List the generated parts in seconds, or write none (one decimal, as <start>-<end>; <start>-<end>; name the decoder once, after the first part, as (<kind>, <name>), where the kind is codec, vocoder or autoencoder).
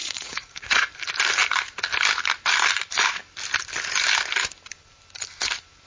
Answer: 0.0-0.9 (vocoder, Vocos)